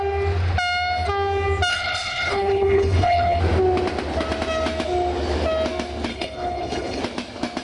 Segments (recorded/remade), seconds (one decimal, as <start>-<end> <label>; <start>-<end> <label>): 0.0-1.7 recorded; 1.7-3.4 remade; 3.4-6.1 recorded; 6.1-7.0 remade; 7.0-7.6 recorded